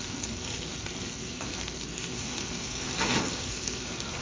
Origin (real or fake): fake